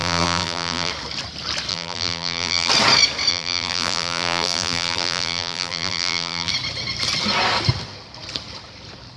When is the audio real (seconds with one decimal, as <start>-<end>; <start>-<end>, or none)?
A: 0.9-1.7; 2.7-3.3; 6.5-9.2